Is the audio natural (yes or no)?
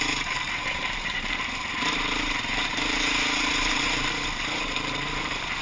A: no